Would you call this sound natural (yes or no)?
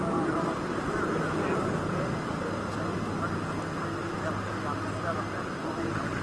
yes